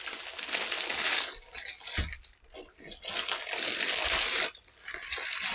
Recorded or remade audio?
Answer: recorded